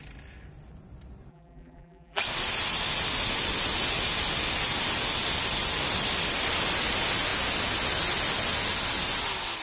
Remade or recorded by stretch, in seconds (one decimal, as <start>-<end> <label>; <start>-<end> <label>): 0.0-1.3 recorded; 1.3-2.2 remade; 2.2-9.6 recorded